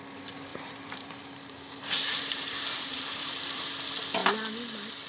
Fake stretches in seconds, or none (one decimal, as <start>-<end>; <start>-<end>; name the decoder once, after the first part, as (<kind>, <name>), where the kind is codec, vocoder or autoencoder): 0.5-3.6 (vocoder, BigVGAN v2)